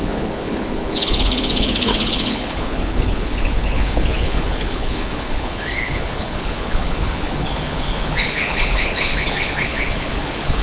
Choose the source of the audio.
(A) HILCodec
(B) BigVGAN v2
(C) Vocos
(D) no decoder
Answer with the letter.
A